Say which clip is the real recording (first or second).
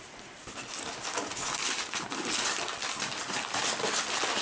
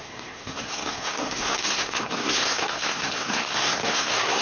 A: first